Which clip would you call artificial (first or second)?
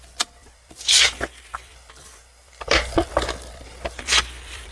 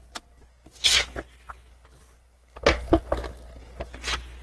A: first